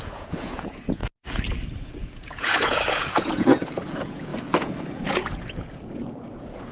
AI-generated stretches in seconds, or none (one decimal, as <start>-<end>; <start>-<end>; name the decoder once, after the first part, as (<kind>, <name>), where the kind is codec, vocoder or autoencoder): 0.0-1.0 (vocoder, Vocos); 1.7-6.7